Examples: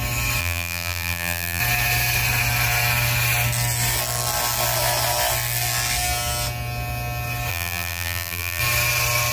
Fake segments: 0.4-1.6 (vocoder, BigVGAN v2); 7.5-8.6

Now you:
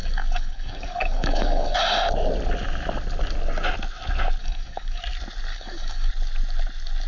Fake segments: 0.0-1.8 (codec, DAC); 4.4-5.0; 5.5-6.1

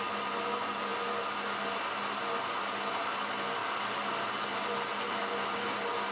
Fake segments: none

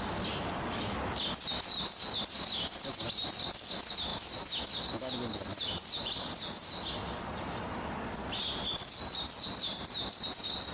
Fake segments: 5.5-6.4 (vocoder, BigVGAN v2)

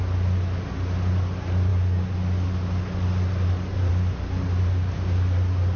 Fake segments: none

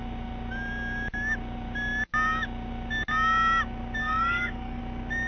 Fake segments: 4.0-4.8 (codec, DAC)